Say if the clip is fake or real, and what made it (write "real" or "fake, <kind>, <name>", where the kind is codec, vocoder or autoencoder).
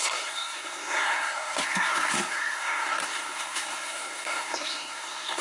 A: fake, codec, SNAC